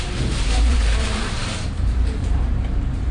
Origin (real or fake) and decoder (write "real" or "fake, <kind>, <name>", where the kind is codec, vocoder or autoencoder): fake, vocoder, BigVGAN v2